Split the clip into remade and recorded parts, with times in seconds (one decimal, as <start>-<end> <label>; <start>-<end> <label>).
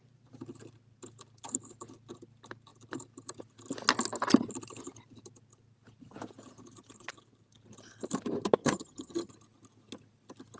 0.0-8.6 recorded; 8.6-9.3 remade; 9.3-10.6 recorded